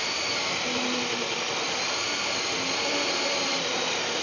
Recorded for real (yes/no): yes